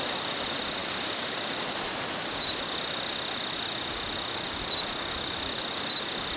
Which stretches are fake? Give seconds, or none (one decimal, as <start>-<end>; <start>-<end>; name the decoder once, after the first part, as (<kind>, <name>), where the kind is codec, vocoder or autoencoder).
0.0-6.4 (vocoder, BigVGAN v2)